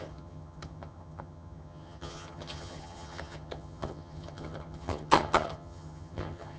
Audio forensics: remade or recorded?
remade